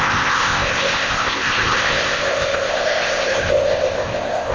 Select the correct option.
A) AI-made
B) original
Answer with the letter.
A